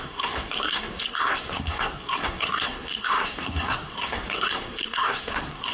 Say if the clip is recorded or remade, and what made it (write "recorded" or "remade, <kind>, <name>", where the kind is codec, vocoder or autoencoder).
remade, codec, SNAC